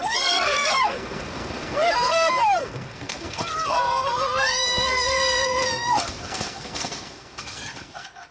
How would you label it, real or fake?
fake